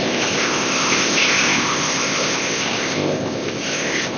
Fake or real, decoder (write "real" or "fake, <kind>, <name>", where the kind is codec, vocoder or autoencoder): fake, codec, ZipCodec